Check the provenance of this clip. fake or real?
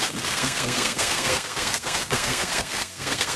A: fake